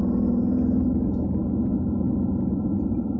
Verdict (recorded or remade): recorded